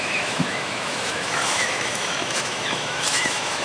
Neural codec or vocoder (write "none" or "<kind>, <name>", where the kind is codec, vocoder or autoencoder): autoencoder, DAC-VAE